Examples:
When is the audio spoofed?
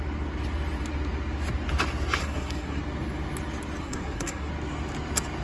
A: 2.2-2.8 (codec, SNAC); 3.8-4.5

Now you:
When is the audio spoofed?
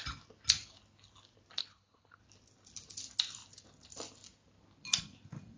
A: 1.6-2.2 (codec, HILCodec)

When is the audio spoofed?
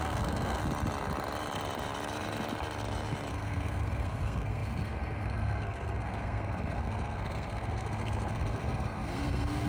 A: 0.0-0.6 (codec, SNAC); 3.3-9.7